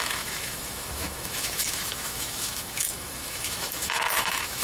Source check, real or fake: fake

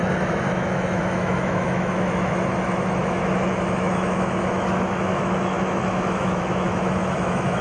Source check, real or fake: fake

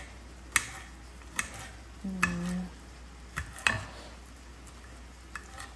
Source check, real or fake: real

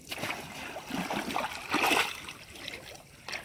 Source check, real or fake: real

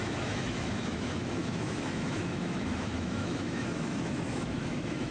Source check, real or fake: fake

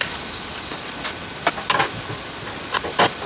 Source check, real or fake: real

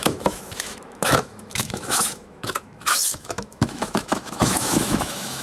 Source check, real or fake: fake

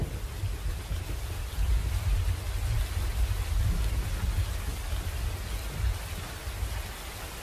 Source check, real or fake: real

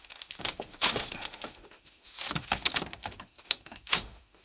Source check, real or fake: fake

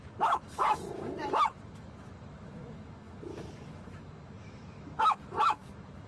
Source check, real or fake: fake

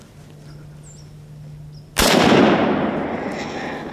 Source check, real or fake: real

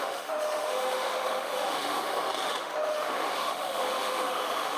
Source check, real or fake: fake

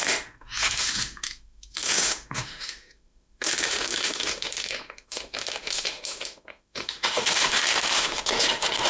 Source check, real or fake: fake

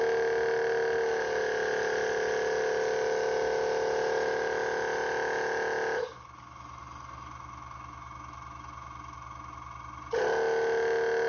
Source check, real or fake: real